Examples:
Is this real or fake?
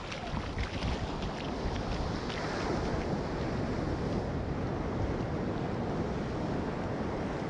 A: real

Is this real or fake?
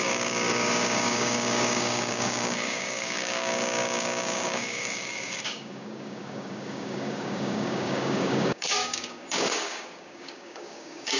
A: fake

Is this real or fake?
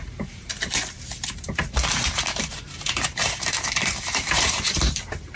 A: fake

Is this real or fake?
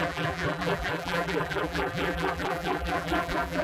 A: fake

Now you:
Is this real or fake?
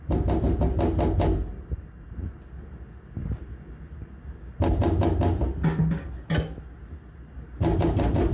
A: real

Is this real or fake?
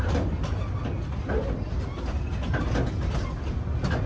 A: real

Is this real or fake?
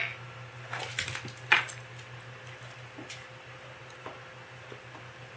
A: real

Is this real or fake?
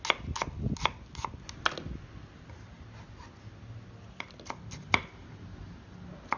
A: real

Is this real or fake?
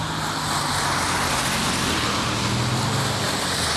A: real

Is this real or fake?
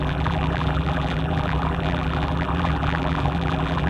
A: fake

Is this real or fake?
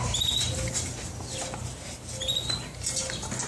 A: real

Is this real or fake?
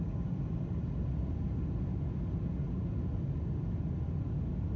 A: real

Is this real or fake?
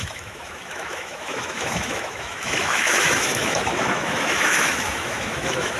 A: fake